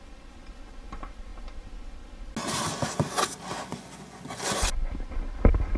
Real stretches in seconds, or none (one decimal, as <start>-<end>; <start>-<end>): 0.0-3.7; 4.9-5.8